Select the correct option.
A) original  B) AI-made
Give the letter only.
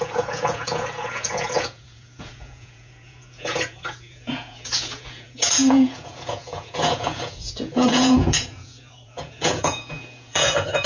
B